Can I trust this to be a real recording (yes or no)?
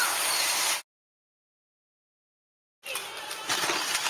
yes